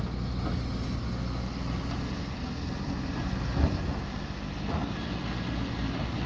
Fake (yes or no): no